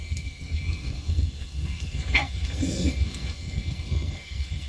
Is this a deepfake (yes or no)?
yes